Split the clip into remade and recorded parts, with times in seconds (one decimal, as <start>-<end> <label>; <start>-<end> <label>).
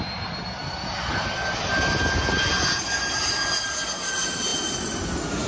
0.0-5.5 recorded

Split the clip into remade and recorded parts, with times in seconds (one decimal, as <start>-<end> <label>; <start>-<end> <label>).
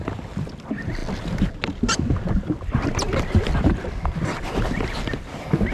0.0-5.7 recorded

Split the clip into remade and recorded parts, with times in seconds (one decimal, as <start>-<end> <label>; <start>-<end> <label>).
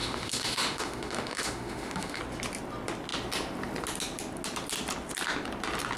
0.0-2.2 remade; 2.2-6.0 recorded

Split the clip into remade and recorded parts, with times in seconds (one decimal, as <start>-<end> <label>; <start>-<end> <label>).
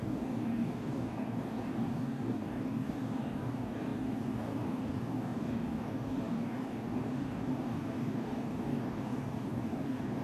0.0-10.2 remade